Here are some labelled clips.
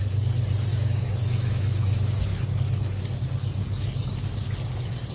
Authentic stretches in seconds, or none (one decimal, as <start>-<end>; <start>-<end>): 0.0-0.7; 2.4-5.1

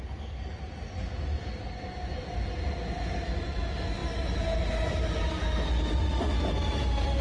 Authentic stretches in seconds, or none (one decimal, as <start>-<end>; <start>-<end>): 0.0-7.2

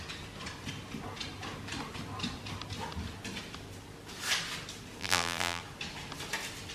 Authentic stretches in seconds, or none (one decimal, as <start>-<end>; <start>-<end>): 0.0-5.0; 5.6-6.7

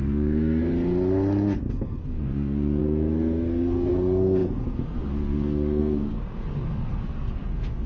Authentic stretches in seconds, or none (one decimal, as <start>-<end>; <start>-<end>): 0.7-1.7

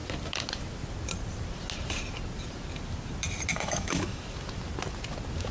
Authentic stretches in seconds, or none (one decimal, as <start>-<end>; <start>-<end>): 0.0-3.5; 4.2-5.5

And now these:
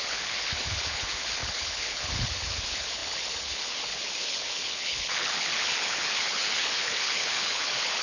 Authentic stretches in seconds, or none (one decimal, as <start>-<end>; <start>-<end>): none